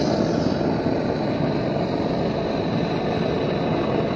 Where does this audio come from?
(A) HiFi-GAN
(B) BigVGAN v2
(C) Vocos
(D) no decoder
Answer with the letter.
D